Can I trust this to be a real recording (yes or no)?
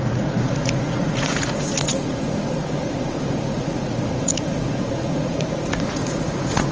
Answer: no